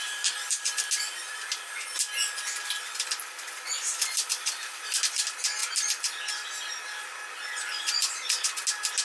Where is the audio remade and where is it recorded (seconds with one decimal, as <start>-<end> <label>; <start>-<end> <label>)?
0.0-9.0 recorded